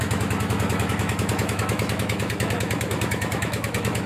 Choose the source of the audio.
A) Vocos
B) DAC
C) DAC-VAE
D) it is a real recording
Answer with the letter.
C